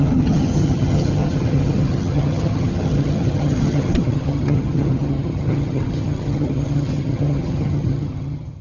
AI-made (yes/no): yes